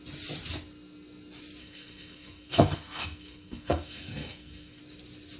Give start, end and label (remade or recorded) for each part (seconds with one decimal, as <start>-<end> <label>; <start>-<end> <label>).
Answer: 0.0-1.6 recorded; 1.6-4.8 remade; 4.8-5.4 recorded